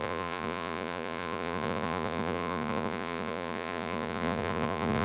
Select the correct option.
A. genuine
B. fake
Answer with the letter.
B